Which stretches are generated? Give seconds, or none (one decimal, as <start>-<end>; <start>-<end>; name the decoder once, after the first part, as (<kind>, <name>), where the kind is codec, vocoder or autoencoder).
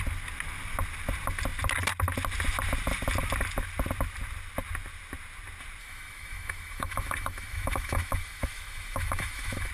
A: 5.8-9.7 (autoencoder, DAC-VAE)